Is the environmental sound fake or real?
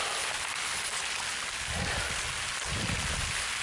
real